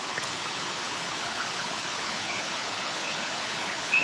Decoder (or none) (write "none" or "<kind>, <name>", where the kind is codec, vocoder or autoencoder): codec, HILCodec